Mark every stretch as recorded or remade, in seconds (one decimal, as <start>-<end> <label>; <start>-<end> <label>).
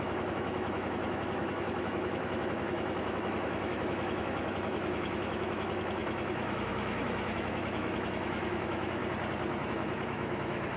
0.0-9.0 remade; 9.0-9.7 recorded; 9.7-10.8 remade